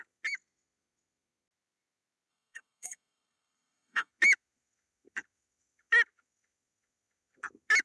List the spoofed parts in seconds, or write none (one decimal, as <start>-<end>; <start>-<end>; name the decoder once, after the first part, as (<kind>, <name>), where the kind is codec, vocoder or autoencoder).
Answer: 2.3-4.1 (codec, SNAC)